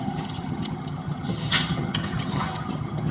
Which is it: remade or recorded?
remade